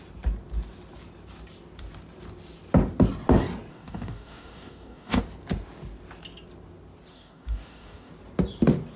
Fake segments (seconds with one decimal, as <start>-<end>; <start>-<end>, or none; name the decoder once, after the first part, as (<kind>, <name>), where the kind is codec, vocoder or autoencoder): 3.7-5.2 (codec, DAC); 7.1-8.1